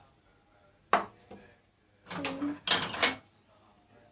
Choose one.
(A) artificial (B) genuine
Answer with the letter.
B